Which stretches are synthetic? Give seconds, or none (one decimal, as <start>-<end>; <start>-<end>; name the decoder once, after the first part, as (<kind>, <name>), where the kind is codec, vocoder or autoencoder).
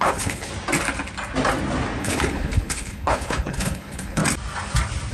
0.0-0.5 (codec, HILCodec); 2.0-4.2